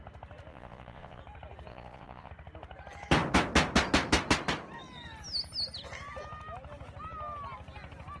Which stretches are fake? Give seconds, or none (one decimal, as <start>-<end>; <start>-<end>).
0.5-1.2; 1.7-2.3